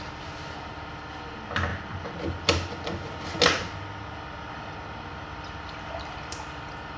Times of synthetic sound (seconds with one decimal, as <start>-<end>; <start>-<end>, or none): 0.0-1.7; 4.5-7.0